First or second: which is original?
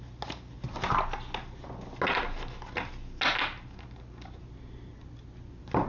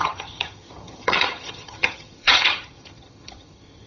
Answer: first